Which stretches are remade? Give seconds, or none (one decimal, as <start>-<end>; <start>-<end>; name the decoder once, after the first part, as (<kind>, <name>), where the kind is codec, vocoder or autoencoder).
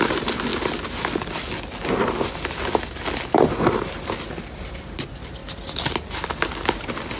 0.0-0.5 (vocoder, BigVGAN v2); 4.3-5.4; 6.5-7.2